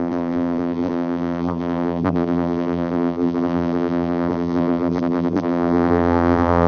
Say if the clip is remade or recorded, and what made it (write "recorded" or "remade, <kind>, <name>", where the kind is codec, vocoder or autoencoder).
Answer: remade, vocoder, BigVGAN v2